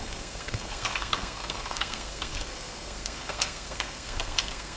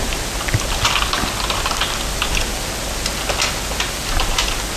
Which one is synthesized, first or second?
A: first